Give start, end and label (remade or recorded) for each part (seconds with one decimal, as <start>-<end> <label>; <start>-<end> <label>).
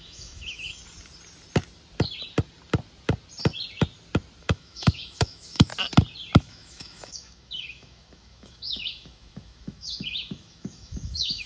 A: 0.0-0.8 remade; 0.8-4.4 recorded; 4.4-5.7 remade; 5.7-6.4 recorded; 6.4-11.5 remade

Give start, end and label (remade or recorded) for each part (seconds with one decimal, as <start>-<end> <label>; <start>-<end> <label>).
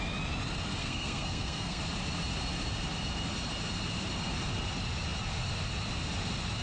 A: 0.0-0.8 recorded; 0.8-1.8 remade; 1.8-6.6 recorded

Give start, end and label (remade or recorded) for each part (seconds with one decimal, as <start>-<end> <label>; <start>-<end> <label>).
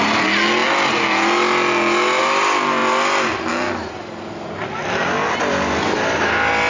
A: 0.0-6.7 recorded